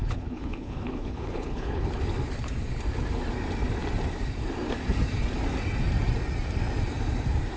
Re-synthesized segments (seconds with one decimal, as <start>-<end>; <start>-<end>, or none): 0.0-2.0